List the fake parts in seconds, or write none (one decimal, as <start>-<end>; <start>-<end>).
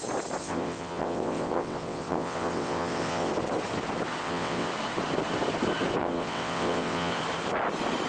0.4-3.3; 4.2-4.7; 6.0-7.2